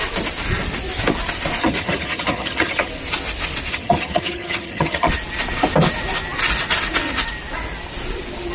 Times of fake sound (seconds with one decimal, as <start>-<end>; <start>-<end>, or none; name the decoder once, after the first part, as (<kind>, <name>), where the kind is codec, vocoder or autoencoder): 1.6-2.9 (vocoder, HiFi-GAN); 3.7-5.1

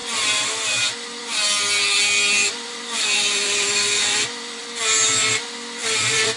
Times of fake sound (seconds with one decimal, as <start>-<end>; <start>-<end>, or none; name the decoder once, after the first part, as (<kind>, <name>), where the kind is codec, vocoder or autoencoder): 2.4-4.6 (vocoder, BigVGAN v2); 5.8-6.4

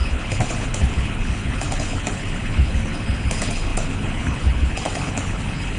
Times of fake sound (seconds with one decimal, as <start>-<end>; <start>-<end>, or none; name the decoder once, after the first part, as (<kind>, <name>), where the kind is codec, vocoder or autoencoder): 0.0-5.8 (codec, HILCodec)

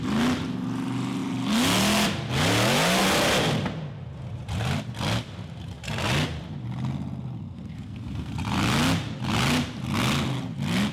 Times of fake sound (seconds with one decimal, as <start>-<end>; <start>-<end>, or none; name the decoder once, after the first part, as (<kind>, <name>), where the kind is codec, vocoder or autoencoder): 7.4-8.3 (codec, SNAC)